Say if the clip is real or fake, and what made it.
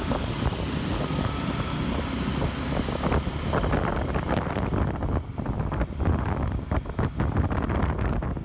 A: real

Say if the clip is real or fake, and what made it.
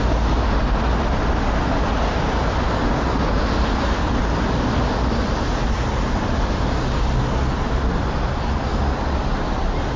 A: real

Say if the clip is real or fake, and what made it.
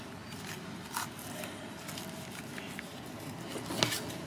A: real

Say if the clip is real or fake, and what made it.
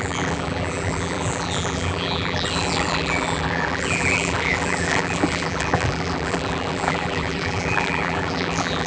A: fake, vocoder, BigVGAN v2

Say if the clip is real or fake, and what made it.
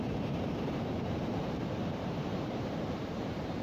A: fake, vocoder, BigVGAN v2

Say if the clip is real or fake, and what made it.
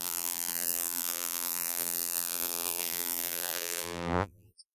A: fake, vocoder, BigVGAN v2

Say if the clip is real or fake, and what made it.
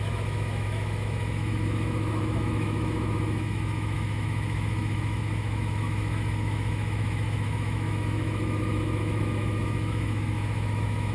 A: fake, autoencoder, DAC-VAE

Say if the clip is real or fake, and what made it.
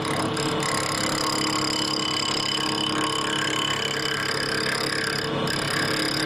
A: real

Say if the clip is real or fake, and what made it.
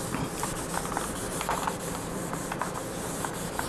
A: real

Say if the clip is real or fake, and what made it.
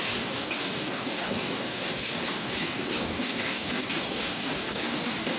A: fake, codec, DAC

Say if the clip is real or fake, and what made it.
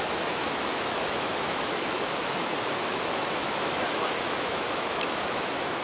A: fake, autoencoder, DAC-VAE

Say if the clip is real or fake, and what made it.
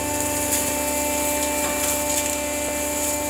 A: real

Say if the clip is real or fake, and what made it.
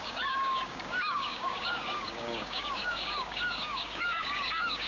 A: fake, codec, DAC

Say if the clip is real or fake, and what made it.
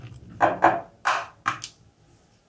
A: real